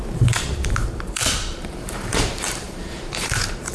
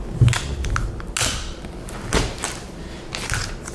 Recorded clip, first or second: second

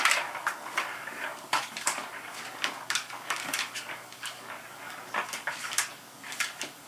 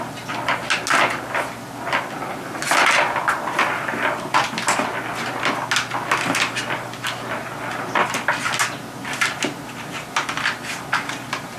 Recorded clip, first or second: second